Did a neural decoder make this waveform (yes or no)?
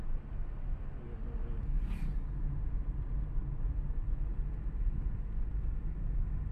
no